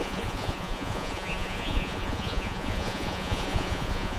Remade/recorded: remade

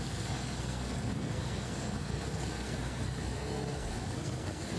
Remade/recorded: remade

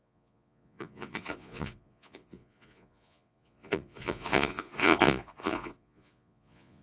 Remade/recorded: remade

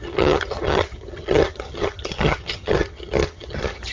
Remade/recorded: remade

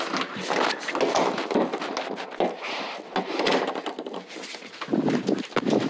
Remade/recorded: recorded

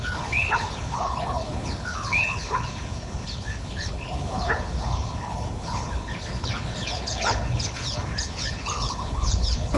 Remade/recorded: remade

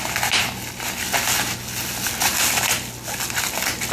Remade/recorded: recorded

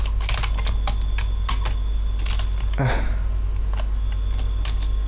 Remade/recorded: recorded